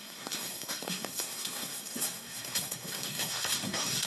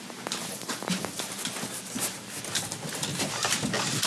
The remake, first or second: first